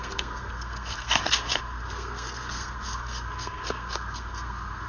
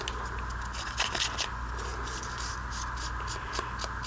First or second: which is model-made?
first